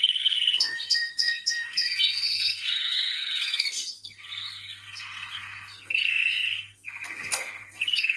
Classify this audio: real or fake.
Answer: fake